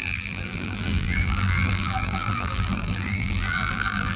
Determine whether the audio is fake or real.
fake